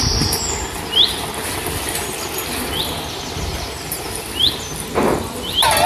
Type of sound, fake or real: real